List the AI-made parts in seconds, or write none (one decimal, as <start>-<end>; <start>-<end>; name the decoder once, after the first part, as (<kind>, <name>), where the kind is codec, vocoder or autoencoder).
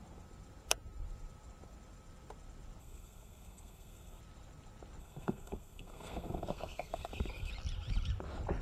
2.8-4.2 (codec, SNAC); 5.0-7.5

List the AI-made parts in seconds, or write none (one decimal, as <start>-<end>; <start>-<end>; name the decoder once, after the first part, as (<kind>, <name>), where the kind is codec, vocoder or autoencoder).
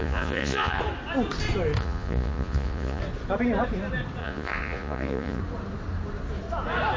0.0-0.8 (vocoder, Vocos); 1.8-3.0; 4.2-5.4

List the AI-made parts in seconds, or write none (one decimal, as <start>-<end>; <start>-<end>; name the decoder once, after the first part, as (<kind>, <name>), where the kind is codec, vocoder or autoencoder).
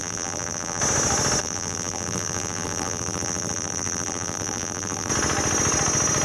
0.0-0.8 (vocoder, BigVGAN v2); 1.4-5.1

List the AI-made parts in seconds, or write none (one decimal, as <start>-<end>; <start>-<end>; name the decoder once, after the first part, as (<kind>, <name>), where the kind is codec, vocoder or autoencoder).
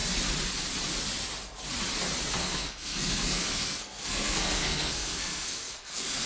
2.4-6.3 (codec, SNAC)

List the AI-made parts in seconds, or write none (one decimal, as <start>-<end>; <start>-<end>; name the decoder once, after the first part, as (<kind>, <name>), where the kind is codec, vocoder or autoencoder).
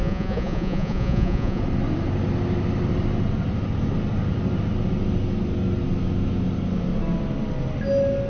0.0-1.6 (vocoder, Vocos)